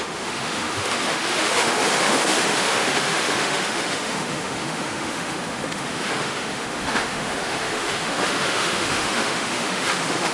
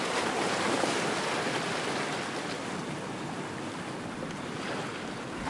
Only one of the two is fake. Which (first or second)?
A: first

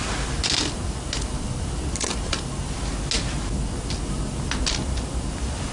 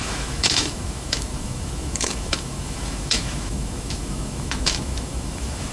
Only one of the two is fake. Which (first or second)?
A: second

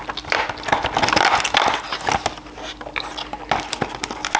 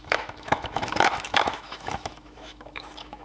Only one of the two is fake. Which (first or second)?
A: second